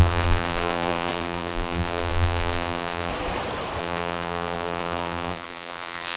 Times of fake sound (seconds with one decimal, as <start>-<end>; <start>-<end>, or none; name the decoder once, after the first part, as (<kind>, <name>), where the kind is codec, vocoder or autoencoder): 0.0-3.1 (vocoder, BigVGAN v2); 3.8-6.2